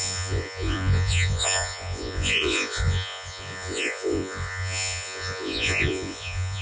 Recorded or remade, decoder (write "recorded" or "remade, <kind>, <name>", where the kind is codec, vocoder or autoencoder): remade, vocoder, Vocos